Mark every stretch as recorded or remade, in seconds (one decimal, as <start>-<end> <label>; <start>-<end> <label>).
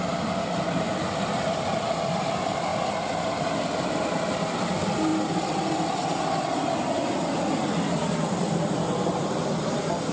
0.0-10.1 recorded